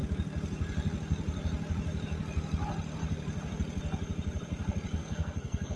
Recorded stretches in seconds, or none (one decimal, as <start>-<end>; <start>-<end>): 0.0-5.0